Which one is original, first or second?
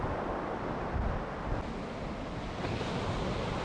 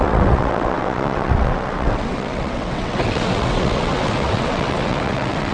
first